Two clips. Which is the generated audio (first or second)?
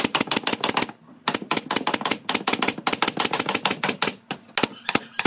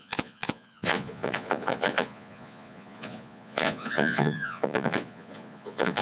second